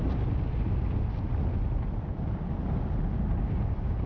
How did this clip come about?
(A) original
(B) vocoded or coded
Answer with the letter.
A